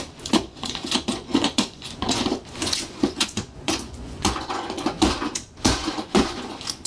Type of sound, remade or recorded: remade